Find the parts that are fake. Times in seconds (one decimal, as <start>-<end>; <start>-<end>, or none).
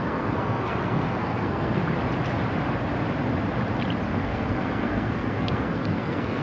0.0-1.8; 4.1-6.4